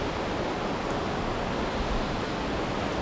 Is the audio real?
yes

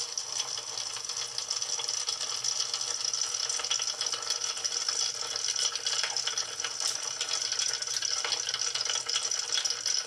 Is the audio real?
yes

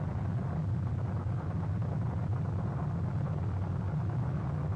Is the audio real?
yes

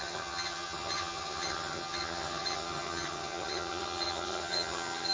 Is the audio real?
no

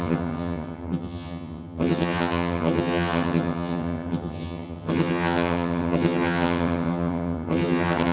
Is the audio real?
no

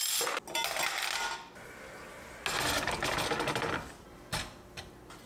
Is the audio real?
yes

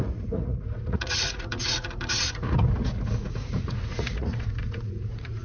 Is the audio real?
no